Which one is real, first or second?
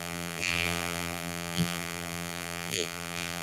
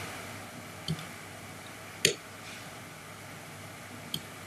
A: second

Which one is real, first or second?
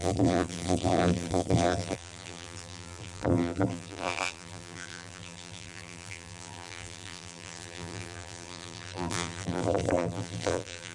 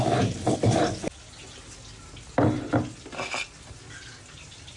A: second